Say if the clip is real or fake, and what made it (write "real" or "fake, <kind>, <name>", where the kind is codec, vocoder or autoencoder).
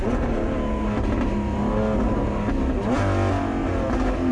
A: real